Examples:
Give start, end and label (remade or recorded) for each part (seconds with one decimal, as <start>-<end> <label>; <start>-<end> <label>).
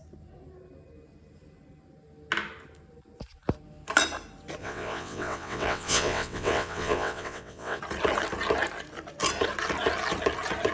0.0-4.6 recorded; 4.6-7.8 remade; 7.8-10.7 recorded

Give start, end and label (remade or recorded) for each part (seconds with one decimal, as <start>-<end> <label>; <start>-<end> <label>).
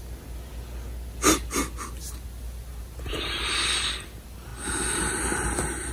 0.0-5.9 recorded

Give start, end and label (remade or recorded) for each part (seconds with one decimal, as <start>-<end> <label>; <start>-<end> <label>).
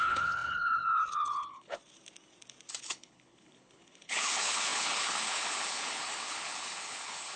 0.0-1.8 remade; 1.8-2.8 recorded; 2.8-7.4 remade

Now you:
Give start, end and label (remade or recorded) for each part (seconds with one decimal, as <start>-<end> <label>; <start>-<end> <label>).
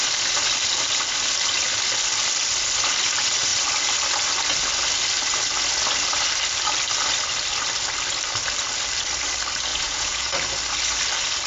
0.0-9.7 recorded; 9.7-10.3 remade; 10.3-11.5 recorded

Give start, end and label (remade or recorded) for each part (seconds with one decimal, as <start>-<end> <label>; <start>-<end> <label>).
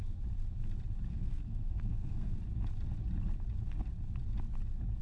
0.0-1.1 recorded; 1.1-2.4 remade; 2.4-5.0 recorded